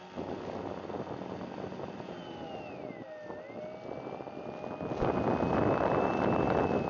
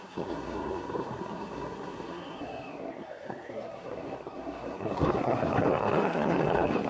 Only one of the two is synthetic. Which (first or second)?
second